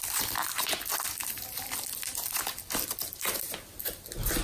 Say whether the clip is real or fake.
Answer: real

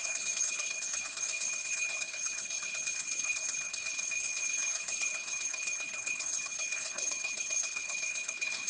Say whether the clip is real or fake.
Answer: fake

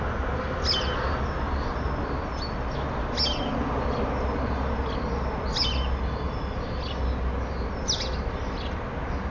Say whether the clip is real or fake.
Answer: real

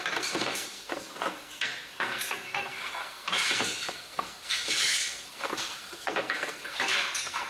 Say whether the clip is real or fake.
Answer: fake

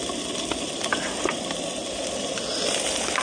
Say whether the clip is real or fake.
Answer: fake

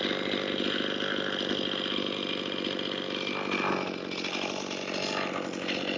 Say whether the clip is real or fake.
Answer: real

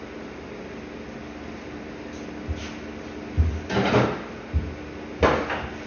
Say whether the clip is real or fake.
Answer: real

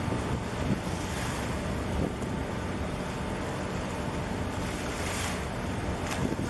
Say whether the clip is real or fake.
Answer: real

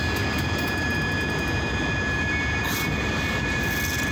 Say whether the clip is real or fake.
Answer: real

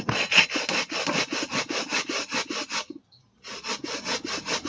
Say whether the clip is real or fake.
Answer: real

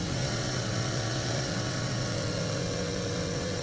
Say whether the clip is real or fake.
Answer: fake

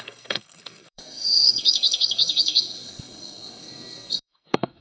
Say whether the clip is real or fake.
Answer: fake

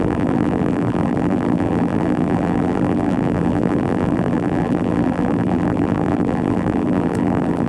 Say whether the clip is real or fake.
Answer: fake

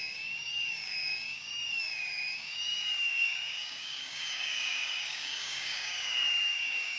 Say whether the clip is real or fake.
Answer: fake